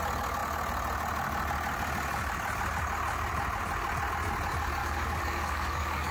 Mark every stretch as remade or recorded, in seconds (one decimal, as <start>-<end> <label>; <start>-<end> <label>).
0.0-4.8 recorded; 4.8-6.1 remade